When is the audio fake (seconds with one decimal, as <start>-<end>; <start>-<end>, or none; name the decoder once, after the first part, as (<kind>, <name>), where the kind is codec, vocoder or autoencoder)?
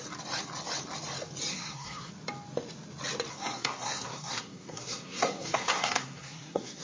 1.5-2.1 (codec, SNAC); 3.3-6.8